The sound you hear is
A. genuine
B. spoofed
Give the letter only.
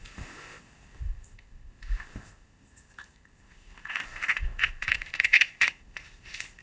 B